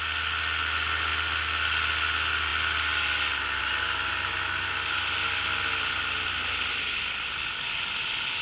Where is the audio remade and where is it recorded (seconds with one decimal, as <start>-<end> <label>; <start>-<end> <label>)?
0.0-8.4 recorded